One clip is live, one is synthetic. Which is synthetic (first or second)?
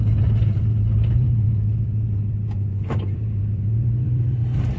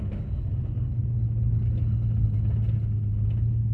first